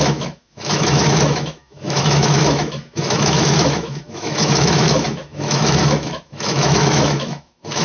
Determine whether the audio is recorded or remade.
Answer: remade